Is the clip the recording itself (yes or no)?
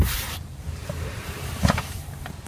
no